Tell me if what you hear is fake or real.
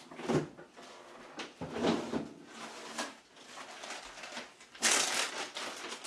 real